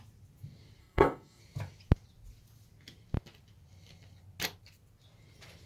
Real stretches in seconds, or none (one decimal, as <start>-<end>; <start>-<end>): 0.0-0.8; 1.4-5.7